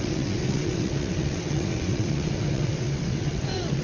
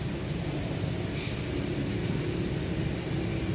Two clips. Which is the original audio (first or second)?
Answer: second